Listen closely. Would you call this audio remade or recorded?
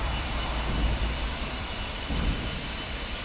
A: remade